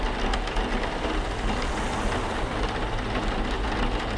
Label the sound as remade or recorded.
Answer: recorded